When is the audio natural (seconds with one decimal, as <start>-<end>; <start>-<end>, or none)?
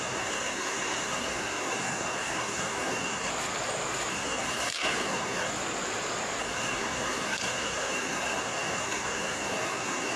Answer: 3.3-4.1; 5.5-6.4